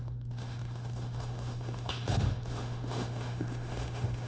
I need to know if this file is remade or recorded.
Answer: remade